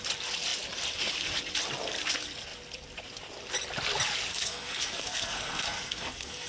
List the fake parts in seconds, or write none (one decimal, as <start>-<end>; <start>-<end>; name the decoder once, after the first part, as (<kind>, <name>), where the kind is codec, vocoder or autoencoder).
4.3-6.5 (codec, SNAC)